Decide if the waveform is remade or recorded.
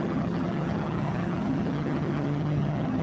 remade